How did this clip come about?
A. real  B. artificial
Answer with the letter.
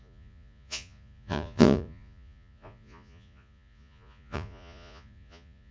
B